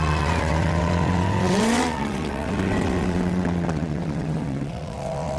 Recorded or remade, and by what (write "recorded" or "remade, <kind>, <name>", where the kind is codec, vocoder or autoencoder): remade, vocoder, WaveNeXt